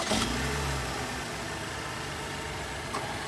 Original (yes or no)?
yes